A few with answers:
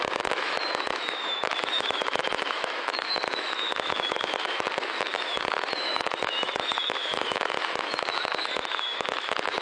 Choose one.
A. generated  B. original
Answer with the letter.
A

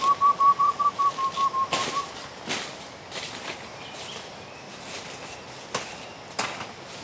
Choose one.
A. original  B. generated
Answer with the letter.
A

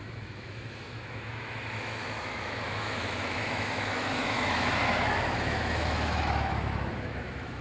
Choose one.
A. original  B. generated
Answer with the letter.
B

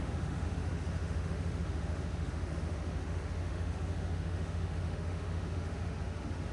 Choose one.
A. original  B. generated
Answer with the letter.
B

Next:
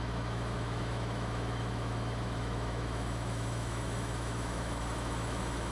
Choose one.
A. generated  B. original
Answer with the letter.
A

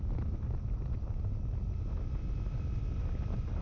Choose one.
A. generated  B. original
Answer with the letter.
B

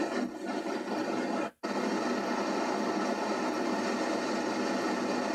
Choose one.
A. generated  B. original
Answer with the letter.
B